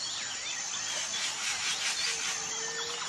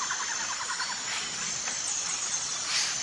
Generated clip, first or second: second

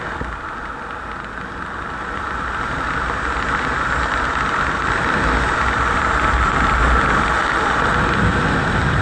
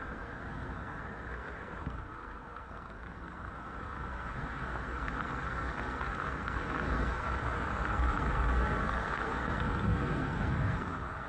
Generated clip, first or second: second